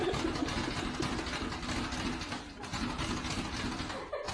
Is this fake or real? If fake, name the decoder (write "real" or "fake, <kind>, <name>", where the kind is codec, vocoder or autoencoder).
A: real